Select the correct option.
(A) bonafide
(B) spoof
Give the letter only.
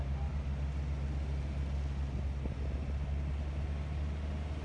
A